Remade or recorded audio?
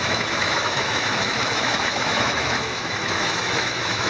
remade